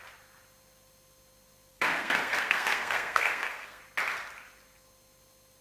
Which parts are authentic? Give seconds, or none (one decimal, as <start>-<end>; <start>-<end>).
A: 0.0-1.7; 3.8-5.6